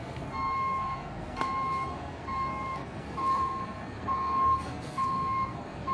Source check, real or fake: fake